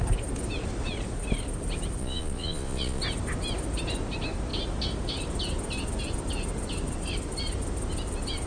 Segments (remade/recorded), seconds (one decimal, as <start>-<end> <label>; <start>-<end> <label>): 0.0-2.0 recorded; 2.0-3.0 remade; 3.0-8.5 recorded